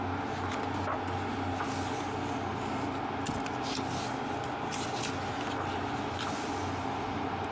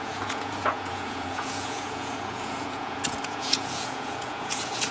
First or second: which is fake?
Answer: second